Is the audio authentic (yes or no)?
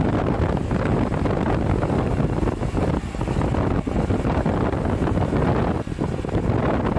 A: yes